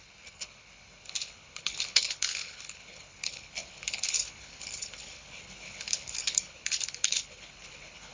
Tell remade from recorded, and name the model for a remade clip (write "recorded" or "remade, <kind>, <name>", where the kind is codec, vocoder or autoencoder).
remade, codec, HILCodec